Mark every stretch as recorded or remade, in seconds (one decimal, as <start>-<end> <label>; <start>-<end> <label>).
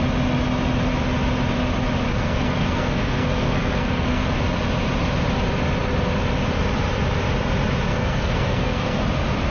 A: 0.0-2.1 recorded; 2.1-4.4 remade; 4.4-7.9 recorded; 7.9-9.0 remade; 9.0-9.5 recorded